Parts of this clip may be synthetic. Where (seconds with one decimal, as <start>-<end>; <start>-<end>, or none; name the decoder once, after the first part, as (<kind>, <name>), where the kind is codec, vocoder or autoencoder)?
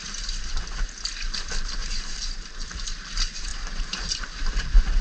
1.8-2.7 (vocoder, BigVGAN v2); 3.5-4.2